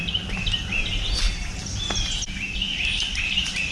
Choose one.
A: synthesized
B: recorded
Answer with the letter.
B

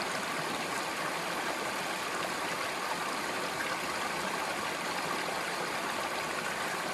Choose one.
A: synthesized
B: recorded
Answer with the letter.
B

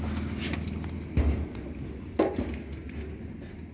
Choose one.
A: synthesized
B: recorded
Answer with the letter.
B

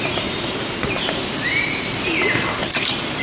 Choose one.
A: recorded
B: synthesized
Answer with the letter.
A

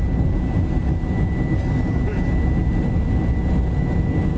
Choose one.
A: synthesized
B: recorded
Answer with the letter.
B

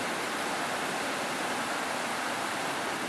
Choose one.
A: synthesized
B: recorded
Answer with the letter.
B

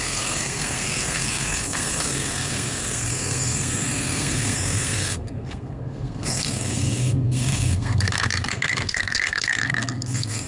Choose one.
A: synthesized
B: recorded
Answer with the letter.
A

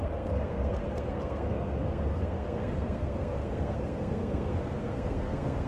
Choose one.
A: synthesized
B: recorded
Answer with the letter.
A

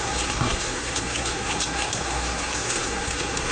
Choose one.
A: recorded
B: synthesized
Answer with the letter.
B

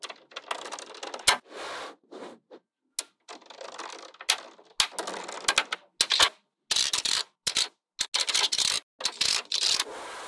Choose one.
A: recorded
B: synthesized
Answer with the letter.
A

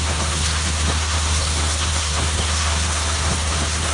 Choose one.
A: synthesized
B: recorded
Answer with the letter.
A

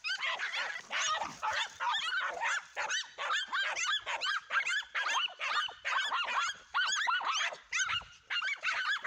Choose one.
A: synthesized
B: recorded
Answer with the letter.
B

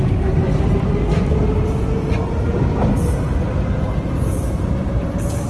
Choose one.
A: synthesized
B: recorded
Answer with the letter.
B